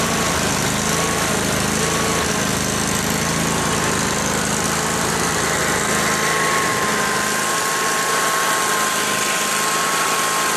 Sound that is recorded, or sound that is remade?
recorded